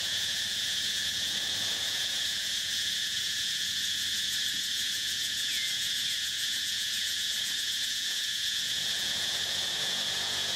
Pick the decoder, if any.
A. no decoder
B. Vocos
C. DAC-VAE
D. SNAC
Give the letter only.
B